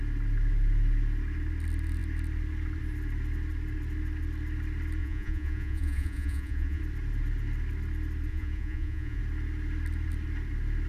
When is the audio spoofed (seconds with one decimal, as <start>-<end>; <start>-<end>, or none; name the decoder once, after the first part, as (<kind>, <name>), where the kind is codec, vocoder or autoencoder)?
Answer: 5.0-6.8 (vocoder, Vocos); 8.3-9.2